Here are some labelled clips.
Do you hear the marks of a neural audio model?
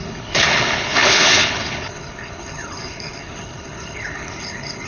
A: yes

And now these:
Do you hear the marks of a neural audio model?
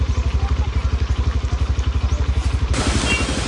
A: no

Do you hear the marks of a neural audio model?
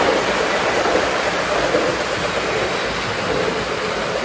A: no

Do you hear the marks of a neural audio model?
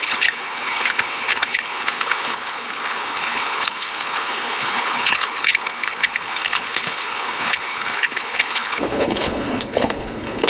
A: yes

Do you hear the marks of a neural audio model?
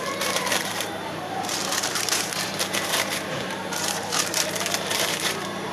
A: yes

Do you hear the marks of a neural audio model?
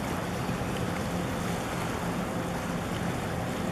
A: no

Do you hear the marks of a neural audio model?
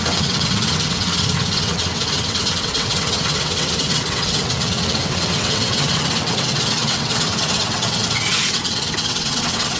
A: yes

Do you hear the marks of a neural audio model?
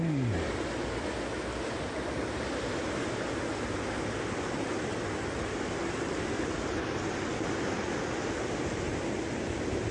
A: no